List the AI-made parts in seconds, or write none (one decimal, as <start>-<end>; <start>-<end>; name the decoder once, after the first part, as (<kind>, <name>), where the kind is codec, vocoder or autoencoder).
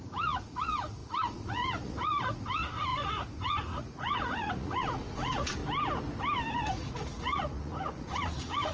0.0-5.6 (vocoder, Vocos); 6.5-8.7